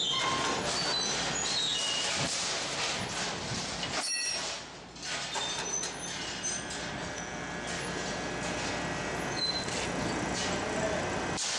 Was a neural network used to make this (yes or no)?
no